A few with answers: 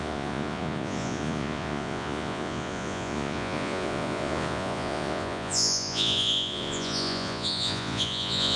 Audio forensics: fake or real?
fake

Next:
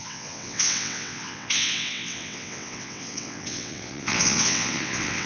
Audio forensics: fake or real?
fake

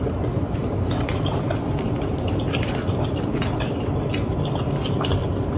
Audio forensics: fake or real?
fake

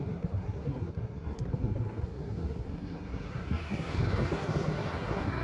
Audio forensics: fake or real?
fake